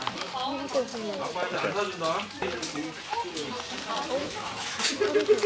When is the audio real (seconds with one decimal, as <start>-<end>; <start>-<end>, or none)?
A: 0.0-4.2; 4.9-5.5